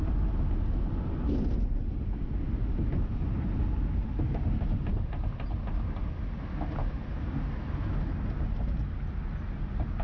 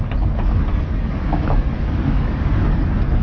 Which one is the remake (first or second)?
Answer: second